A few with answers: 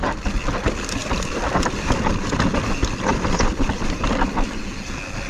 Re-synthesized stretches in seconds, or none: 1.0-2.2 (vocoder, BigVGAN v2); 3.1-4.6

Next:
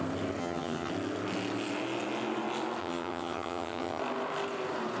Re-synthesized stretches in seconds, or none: 0.4-0.9 (vocoder, HiFi-GAN); 2.8-4.0

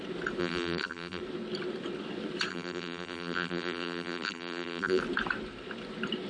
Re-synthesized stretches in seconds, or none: 0.4-1.2 (vocoder, BigVGAN v2); 2.5-5.0

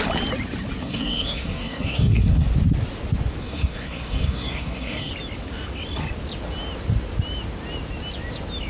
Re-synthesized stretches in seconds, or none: 0.8-2.5 (codec, SNAC); 3.4-5.1

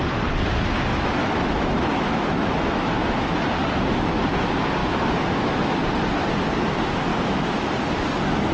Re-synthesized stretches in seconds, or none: 0.9-3.4 (autoencoder, DAC-VAE); 4.8-5.8; 7.1-7.7

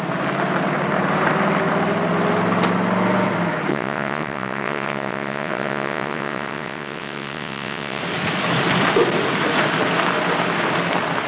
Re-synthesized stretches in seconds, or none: 3.7-8.0 (vocoder, WaveNeXt)

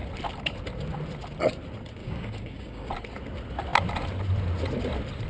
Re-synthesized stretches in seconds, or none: 2.0-2.9 (codec, DAC)